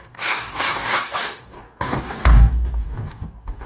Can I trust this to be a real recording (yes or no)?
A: no